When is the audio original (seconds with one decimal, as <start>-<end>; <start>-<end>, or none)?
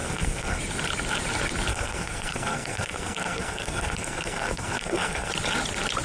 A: 0.6-1.7; 5.3-6.0